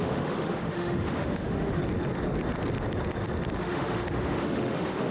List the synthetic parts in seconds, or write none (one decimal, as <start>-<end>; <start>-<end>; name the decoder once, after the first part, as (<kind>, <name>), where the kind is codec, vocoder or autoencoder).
0.0-1.8 (autoencoder, DAC-VAE); 3.6-5.1